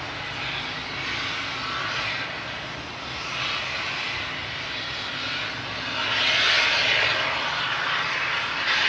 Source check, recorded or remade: recorded